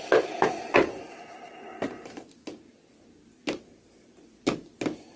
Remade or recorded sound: recorded